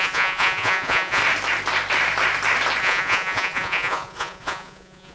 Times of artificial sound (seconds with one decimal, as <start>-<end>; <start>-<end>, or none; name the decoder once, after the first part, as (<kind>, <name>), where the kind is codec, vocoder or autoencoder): 0.0-1.2 (vocoder, Vocos); 2.8-5.1